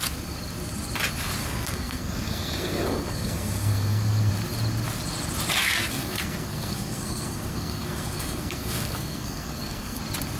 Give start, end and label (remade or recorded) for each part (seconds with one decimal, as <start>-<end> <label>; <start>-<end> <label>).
0.0-1.4 recorded; 1.4-4.3 remade; 4.3-5.6 recorded; 5.6-10.0 remade; 10.0-10.4 recorded